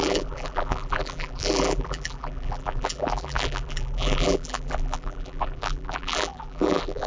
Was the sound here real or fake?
fake